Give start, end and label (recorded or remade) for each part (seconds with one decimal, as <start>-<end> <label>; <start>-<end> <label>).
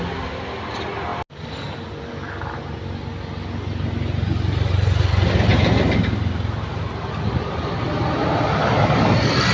0.0-9.5 recorded